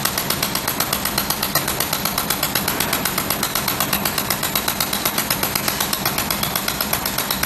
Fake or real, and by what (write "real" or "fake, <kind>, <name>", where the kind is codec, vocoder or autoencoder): fake, vocoder, BigVGAN v2